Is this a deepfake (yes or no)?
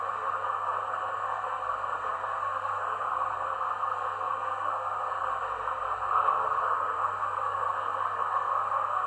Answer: yes